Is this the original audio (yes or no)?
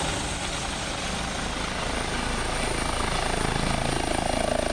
yes